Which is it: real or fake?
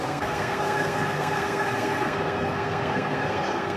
fake